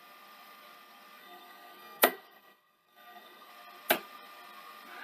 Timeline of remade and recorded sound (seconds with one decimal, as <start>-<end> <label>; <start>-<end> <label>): 0.0-1.2 recorded; 1.2-3.5 remade; 3.5-5.0 recorded